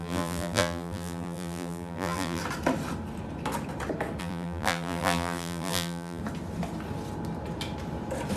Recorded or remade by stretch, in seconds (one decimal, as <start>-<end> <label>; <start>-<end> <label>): 0.0-2.4 remade; 2.4-4.2 recorded; 4.2-6.2 remade; 6.2-8.4 recorded

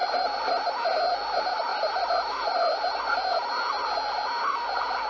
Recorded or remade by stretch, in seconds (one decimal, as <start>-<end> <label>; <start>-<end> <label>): 0.0-0.5 remade; 0.5-5.1 recorded

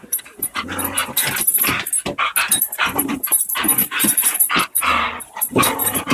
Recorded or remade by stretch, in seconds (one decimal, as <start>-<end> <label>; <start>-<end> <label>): 0.0-1.0 remade; 1.0-2.5 recorded; 2.5-6.1 remade

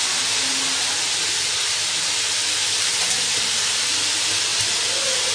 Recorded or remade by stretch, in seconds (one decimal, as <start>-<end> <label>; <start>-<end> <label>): 0.0-2.4 recorded; 2.4-3.8 remade; 3.8-5.3 recorded

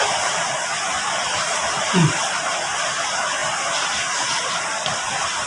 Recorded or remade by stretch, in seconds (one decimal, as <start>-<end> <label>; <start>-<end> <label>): 0.0-0.9 recorded; 0.9-2.4 remade; 2.4-3.4 recorded; 3.4-5.0 remade; 5.0-5.5 recorded

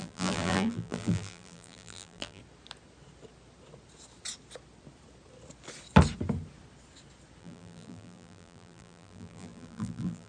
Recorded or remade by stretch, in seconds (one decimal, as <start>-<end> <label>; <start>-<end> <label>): 0.0-2.4 remade; 2.4-7.4 recorded; 7.4-10.3 remade

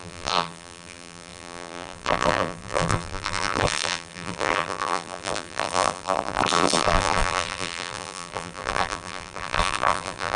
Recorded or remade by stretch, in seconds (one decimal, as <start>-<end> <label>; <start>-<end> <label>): 0.0-10.4 remade

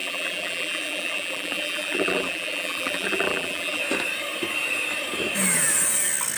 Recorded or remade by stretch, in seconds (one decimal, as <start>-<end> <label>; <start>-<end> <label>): 0.0-3.8 remade; 3.8-6.4 recorded